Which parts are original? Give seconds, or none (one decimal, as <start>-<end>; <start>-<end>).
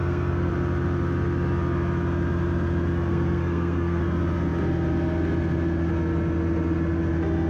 0.5-3.1; 4.0-7.5